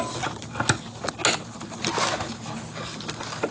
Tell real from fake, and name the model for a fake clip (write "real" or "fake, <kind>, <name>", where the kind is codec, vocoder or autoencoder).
real